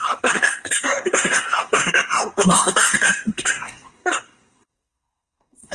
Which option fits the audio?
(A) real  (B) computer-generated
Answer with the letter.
B